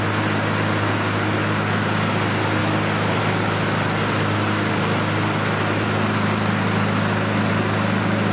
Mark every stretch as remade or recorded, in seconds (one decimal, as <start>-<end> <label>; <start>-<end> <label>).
0.0-8.3 recorded